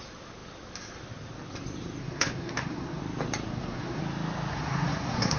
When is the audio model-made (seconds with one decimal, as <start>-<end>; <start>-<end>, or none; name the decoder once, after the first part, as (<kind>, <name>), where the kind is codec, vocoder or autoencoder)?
2.0-3.0 (codec, SNAC); 3.5-4.0; 4.5-5.4